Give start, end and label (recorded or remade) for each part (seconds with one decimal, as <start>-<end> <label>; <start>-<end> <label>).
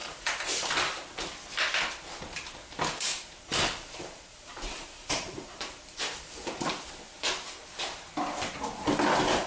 0.0-0.7 remade; 0.7-3.1 recorded; 3.1-6.9 remade; 6.9-9.5 recorded